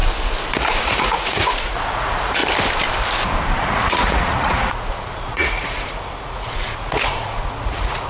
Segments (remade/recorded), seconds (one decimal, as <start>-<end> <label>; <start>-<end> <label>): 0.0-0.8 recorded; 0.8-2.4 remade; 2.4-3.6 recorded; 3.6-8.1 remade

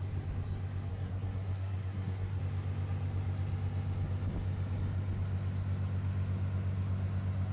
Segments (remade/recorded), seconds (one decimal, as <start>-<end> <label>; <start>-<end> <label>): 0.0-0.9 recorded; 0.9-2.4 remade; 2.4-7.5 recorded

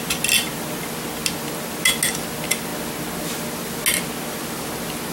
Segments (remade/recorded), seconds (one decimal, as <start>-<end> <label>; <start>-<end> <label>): 0.0-5.1 recorded